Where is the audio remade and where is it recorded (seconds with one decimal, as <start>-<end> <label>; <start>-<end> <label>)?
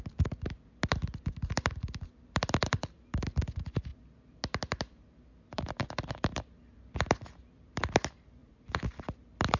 0.0-9.6 recorded